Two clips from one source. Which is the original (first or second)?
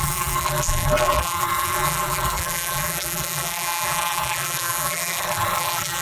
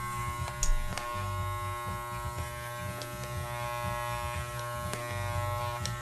second